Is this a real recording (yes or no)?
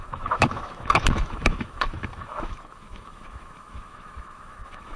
no